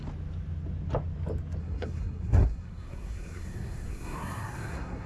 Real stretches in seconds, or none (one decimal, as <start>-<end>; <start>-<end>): 0.0-1.6